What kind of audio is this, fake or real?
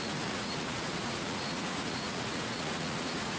fake